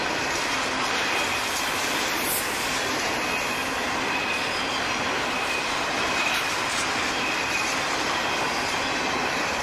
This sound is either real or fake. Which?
real